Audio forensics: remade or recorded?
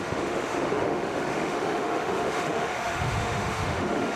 remade